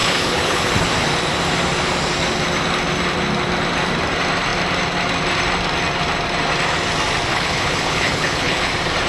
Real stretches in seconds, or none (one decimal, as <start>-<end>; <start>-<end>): 0.7-7.3; 8.7-9.1